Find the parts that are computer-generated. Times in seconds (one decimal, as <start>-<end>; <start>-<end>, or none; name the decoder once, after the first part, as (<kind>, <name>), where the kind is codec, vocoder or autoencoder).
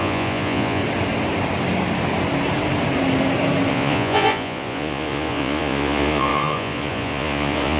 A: 0.0-0.8 (vocoder, Vocos); 3.7-7.8